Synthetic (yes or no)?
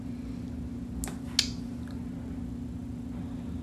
no